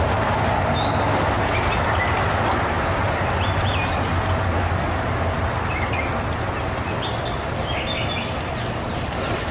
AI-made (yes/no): no